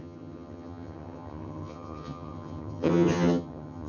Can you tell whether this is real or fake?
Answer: fake